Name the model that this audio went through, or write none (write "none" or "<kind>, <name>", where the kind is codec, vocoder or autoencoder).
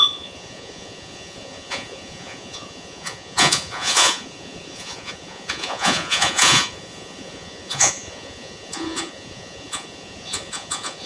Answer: vocoder, Vocos